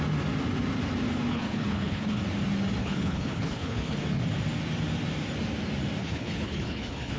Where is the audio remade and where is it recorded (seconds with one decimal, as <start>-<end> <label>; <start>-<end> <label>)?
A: 0.0-1.3 recorded; 1.3-2.2 remade; 2.2-2.8 recorded; 2.8-4.0 remade; 4.0-6.0 recorded; 6.0-7.2 remade